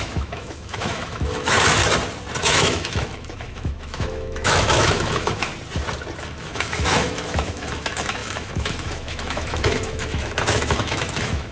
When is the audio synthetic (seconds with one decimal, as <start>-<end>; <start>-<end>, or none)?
0.0-1.8; 2.4-5.5; 6.2-11.5